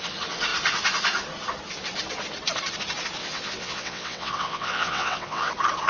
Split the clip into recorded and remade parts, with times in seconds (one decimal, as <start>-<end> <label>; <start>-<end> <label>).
0.0-3.2 recorded; 3.2-5.5 remade; 5.5-5.9 recorded